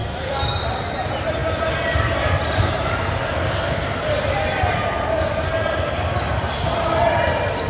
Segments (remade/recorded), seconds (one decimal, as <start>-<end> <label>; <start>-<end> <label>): 0.0-5.5 recorded; 5.5-6.1 remade; 6.1-7.7 recorded